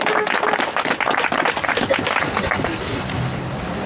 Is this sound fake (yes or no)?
no